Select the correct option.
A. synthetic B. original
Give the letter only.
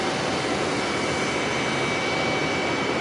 B